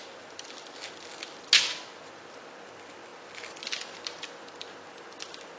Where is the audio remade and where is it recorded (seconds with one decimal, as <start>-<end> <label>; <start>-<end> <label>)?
0.0-5.6 recorded